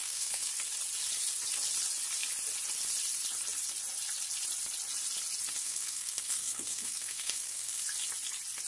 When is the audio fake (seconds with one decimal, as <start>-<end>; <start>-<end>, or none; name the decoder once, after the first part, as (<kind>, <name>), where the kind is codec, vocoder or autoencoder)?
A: 0.0-0.5 (codec, SNAC); 5.6-7.8